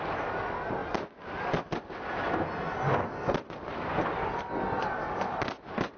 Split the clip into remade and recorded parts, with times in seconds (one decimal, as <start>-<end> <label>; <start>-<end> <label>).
0.0-6.0 recorded